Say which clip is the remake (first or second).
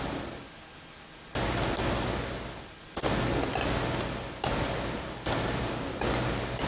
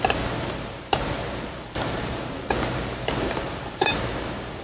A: second